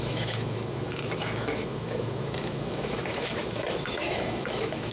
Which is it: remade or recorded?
remade